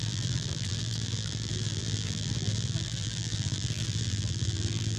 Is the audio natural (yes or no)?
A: no